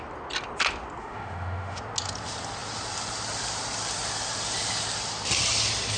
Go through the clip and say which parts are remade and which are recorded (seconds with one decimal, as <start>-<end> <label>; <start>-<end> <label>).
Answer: 0.0-1.0 recorded; 1.0-1.8 remade; 1.8-6.0 recorded